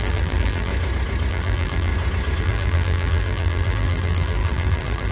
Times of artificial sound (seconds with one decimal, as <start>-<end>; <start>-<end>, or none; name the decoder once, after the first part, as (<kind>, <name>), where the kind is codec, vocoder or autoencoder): 0.0-0.7 (vocoder, BigVGAN v2); 1.3-1.9; 2.4-5.1